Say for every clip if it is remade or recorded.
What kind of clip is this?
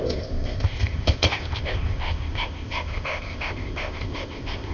remade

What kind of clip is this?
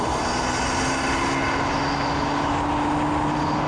recorded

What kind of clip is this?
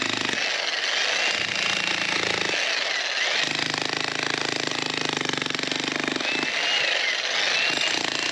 recorded